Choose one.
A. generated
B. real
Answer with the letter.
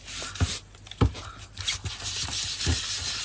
B